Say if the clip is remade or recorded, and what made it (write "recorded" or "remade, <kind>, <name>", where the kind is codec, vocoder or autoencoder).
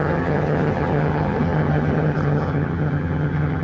remade, vocoder, HiFi-GAN